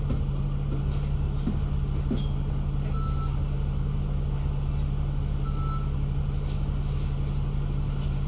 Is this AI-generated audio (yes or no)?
no